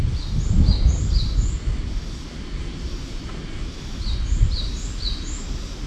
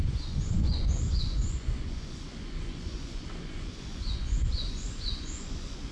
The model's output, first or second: second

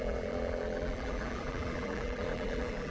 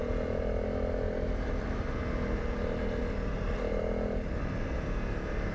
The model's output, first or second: first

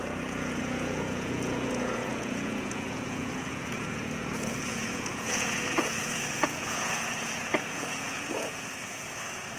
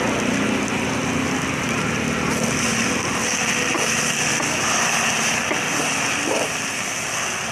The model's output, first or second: first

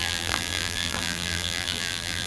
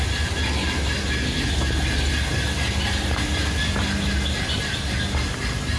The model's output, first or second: first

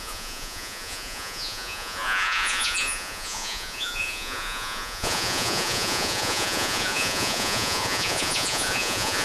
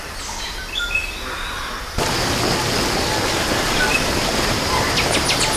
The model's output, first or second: first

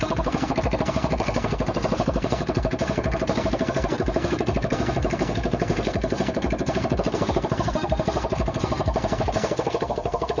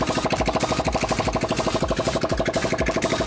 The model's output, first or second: first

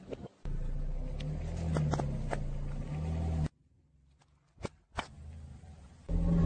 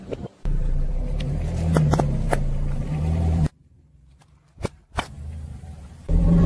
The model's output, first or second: second